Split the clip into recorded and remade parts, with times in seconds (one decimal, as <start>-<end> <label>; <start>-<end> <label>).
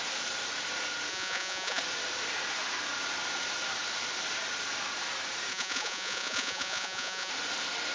0.0-1.1 recorded; 1.1-1.8 remade; 1.8-5.5 recorded; 5.5-7.3 remade; 7.3-7.9 recorded